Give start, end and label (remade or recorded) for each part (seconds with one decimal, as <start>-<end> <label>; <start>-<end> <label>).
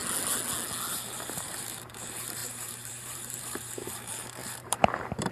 0.0-0.9 recorded; 0.9-5.3 remade